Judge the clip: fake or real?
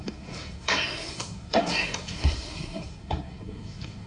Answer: fake